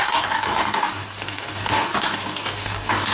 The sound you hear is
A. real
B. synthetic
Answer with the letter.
B